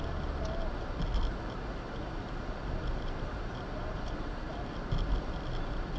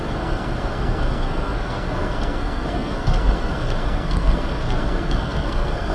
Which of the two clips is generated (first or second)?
second